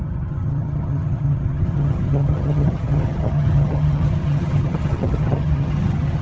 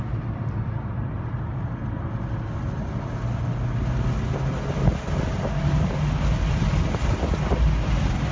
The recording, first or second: second